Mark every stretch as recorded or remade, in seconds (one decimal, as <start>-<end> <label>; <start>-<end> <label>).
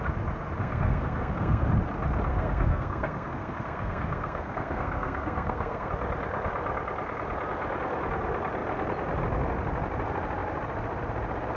0.0-0.6 recorded; 0.6-1.7 remade; 1.7-2.3 recorded; 2.3-5.9 remade; 5.9-11.6 recorded